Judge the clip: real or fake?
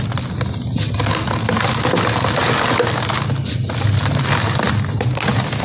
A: real